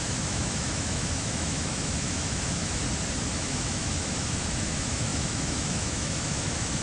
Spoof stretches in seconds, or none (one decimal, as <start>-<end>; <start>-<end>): 0.0-2.8; 3.3-6.8